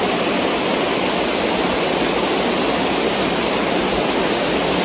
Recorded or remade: recorded